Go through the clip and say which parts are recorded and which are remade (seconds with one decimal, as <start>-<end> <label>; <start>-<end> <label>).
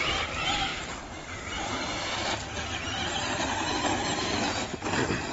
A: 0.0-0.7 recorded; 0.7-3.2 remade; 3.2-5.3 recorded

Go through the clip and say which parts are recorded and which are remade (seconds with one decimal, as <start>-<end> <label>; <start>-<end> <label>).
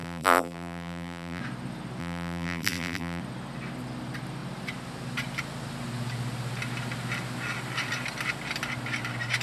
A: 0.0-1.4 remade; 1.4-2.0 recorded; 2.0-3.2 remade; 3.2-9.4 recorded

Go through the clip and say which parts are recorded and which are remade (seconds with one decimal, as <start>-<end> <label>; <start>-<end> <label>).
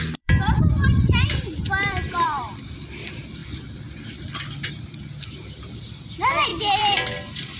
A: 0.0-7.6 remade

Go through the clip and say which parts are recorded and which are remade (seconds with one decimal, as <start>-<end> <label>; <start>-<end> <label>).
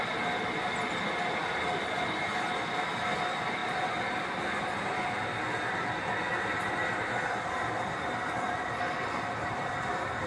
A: 0.0-10.3 recorded